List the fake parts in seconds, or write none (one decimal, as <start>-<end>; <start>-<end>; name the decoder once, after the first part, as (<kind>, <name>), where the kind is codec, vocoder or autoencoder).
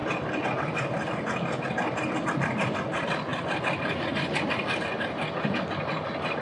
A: none